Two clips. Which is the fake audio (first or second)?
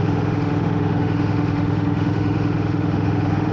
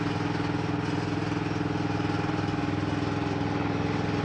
first